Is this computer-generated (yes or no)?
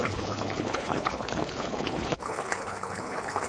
yes